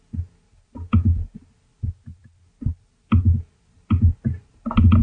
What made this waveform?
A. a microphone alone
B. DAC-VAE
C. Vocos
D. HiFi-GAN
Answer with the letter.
A